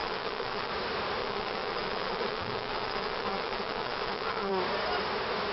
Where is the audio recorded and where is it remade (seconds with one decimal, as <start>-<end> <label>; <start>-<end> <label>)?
0.0-0.7 remade; 0.7-1.2 recorded; 1.2-4.5 remade; 4.5-5.5 recorded